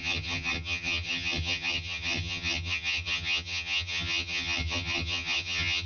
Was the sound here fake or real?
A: fake